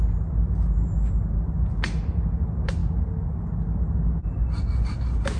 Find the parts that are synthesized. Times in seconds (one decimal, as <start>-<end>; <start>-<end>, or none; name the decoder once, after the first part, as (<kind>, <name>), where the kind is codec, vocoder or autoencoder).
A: none